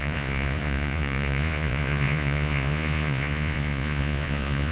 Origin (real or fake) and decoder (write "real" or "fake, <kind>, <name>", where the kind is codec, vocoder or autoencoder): fake, vocoder, Vocos